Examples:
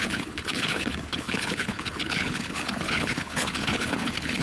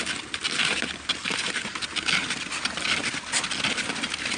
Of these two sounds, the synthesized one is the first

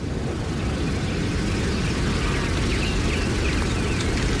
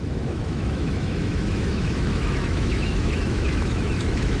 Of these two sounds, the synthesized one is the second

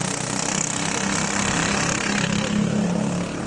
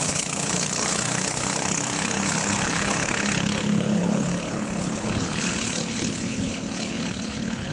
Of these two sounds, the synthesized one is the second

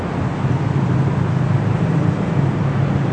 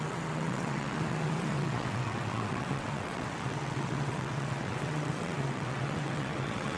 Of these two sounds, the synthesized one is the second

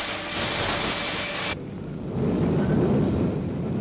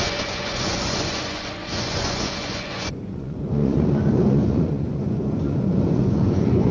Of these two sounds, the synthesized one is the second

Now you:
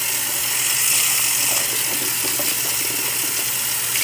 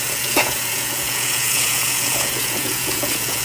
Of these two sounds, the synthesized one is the second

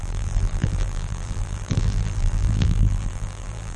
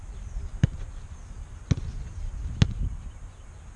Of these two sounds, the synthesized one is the first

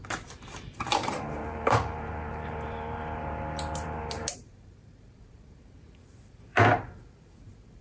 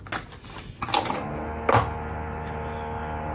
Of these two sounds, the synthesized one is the first